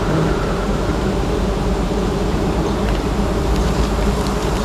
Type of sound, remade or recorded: remade